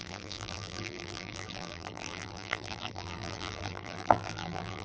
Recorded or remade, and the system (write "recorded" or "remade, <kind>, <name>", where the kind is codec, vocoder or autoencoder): remade, vocoder, BigVGAN v2